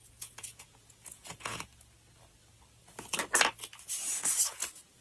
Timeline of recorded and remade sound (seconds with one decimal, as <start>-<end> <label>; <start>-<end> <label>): 0.0-1.7 remade; 1.7-3.9 recorded; 3.9-5.0 remade